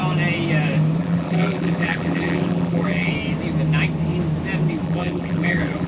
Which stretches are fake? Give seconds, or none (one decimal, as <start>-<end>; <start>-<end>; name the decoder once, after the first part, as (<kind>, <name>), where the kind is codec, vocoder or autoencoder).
1.0-3.1 (vocoder, BigVGAN v2); 4.8-5.9